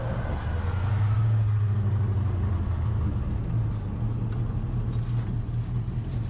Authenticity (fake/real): real